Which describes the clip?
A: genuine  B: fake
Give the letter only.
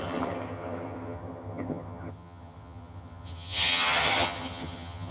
B